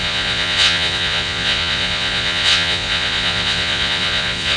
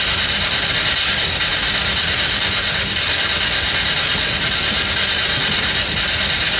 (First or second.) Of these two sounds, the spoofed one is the first